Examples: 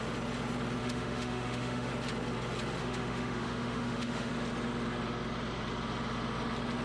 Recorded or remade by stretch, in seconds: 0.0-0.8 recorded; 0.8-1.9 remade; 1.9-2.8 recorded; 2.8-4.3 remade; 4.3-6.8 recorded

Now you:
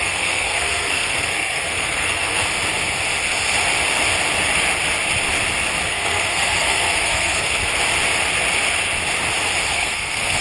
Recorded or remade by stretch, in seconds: 0.0-2.4 remade; 2.4-5.9 recorded; 5.9-7.6 remade; 7.6-9.7 recorded; 9.7-10.4 remade